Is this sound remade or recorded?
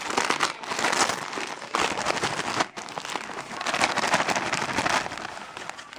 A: recorded